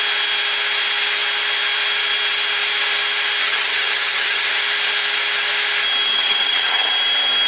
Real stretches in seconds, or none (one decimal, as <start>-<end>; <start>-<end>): 0.0-3.4; 4.6-6.1; 6.9-7.5